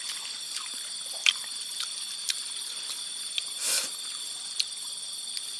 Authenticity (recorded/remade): recorded